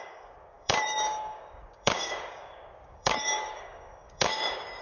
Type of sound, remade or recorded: remade